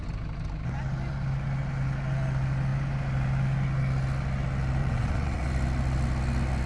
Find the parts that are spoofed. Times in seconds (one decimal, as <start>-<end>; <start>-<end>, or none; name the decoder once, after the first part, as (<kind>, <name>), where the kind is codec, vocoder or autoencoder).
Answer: 4.8-5.5 (vocoder, WaveNeXt)

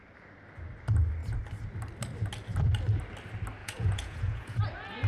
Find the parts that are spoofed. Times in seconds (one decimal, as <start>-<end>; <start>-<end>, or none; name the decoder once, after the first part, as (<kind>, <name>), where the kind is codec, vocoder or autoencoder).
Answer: 3.6-4.6 (vocoder, Vocos)

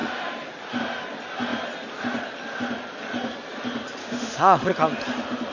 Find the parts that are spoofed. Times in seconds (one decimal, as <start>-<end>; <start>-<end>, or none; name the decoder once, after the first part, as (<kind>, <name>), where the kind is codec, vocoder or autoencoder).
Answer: 4.0-4.7 (autoencoder, DAC-VAE)